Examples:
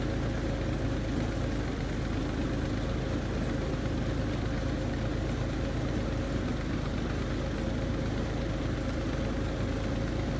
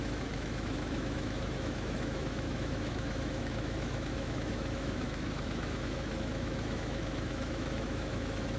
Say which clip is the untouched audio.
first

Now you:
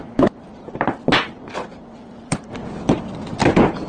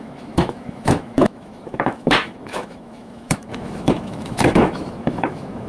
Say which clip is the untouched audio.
first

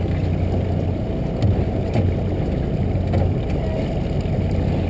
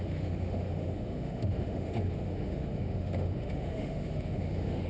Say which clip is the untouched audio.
first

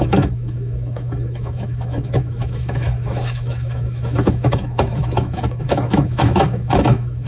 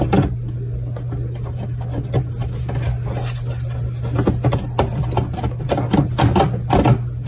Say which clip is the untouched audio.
second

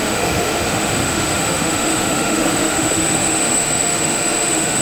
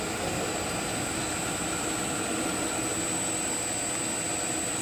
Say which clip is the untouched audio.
second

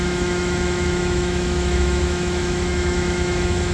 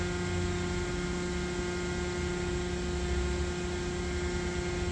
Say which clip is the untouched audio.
second